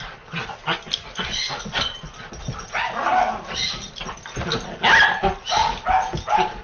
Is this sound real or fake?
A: real